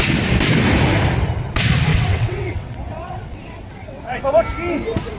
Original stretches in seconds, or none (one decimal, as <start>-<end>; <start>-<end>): 0.0-1.9; 4.2-5.2